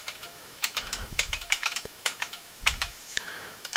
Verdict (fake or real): fake